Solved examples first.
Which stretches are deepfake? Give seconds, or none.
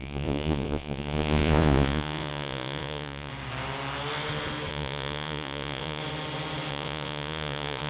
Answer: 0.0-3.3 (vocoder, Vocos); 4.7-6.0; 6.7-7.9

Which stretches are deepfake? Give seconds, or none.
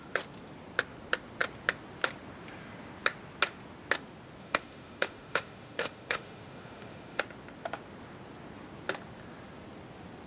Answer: 4.4-7.2 (autoencoder, DAC-VAE)